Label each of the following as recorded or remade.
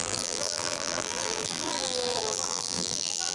remade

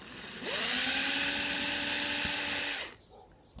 recorded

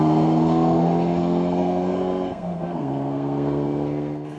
remade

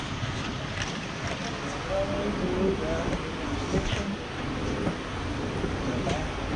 recorded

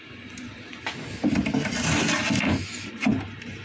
recorded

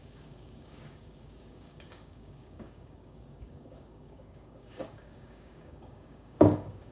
remade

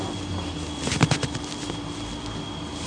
recorded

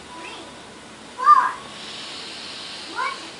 recorded